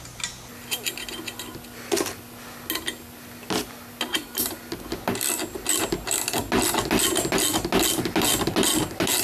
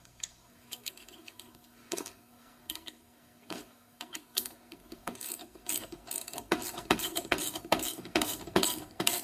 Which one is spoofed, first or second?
second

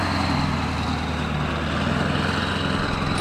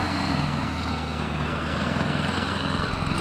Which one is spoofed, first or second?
second